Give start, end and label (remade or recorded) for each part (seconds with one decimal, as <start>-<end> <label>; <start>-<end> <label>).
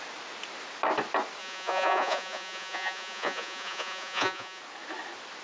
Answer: 0.0-1.4 recorded; 1.4-4.6 remade; 4.6-5.4 recorded